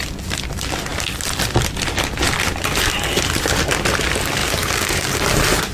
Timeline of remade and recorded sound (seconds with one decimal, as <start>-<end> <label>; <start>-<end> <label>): 0.0-4.4 recorded; 4.4-5.2 remade; 5.2-5.7 recorded